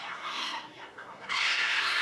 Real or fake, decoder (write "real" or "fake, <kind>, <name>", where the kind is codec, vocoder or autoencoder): fake, codec, SNAC